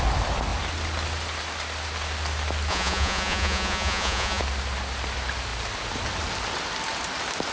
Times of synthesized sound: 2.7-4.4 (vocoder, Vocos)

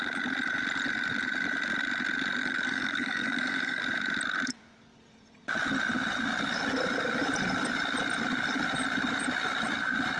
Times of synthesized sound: 2.4-3.8 (codec, DAC)

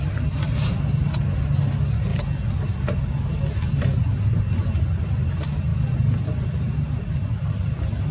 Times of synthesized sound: none

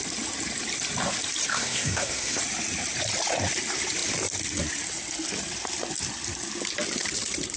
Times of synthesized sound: 1.5-2.4 (codec, SNAC)

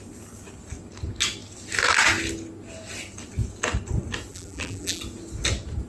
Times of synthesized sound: 4.3-5.0 (vocoder, BigVGAN v2)

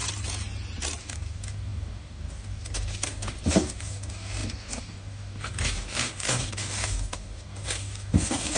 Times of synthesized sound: 1.0-8.6 (codec, DAC)